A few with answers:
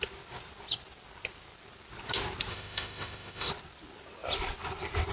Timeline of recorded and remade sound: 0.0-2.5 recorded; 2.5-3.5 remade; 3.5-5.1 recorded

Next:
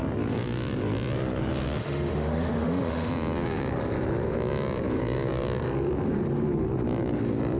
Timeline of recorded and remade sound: 0.0-1.8 recorded; 1.8-3.1 remade; 3.1-7.6 recorded

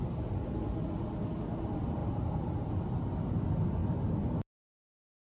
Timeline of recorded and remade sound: 0.0-5.4 recorded

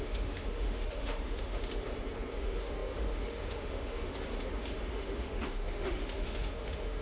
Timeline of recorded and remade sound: 0.0-1.7 remade; 1.7-2.4 recorded; 2.4-7.0 remade

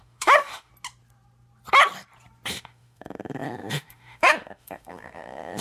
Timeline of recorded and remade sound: 0.0-0.7 remade; 0.7-2.5 recorded; 2.5-5.6 remade